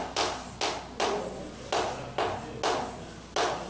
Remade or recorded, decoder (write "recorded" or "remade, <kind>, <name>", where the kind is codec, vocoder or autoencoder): recorded